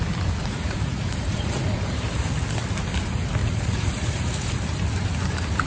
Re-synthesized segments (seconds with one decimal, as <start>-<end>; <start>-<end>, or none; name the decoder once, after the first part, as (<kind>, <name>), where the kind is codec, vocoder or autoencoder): 0.4-1.9 (vocoder, Vocos); 3.4-4.5